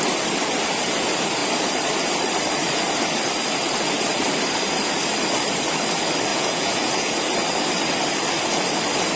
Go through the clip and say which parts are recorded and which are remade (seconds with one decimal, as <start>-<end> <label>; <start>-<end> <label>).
0.0-6.3 recorded; 6.3-7.1 remade; 7.1-9.2 recorded